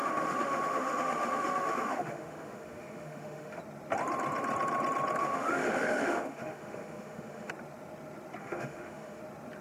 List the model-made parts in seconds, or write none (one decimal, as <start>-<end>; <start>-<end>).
0.0-3.6; 5.2-7.5; 8.4-9.2